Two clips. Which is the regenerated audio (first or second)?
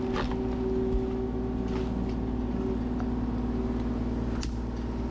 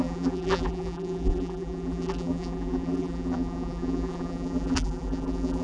second